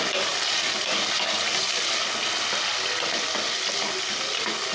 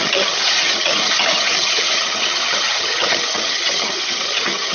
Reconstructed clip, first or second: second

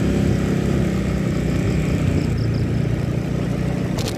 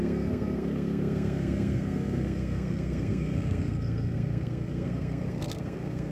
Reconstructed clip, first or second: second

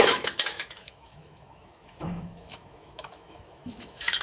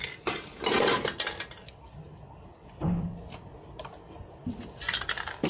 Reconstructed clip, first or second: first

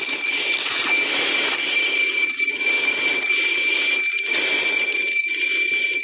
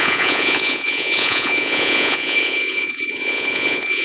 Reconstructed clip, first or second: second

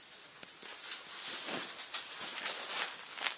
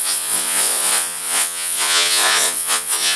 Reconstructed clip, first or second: second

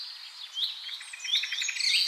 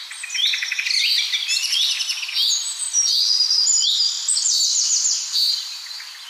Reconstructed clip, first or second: second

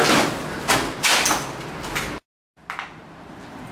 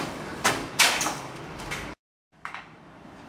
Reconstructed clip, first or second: second